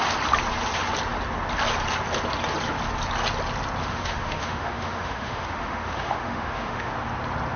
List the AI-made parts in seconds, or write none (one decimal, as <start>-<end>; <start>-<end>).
3.8-6.9